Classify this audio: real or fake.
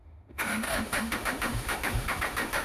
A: fake